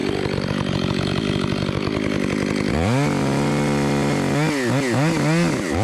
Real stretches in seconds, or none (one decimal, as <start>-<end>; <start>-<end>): 0.0-5.8